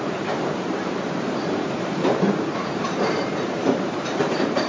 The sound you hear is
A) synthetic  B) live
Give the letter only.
A